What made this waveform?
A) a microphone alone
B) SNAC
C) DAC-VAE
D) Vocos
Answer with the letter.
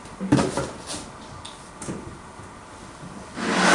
A